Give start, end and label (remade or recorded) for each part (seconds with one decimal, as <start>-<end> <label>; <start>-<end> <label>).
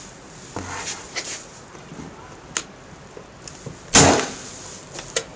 0.0-5.4 recorded